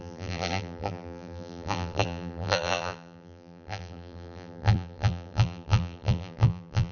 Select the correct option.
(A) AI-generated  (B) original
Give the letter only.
A